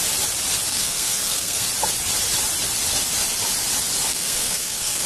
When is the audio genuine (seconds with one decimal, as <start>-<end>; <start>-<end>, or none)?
0.0-0.7; 1.7-4.1